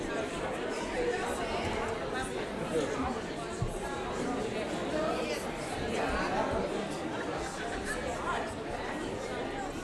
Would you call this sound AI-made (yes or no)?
no